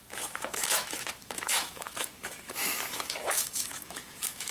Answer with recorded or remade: remade